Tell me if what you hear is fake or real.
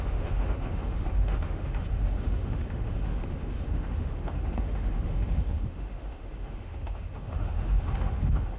fake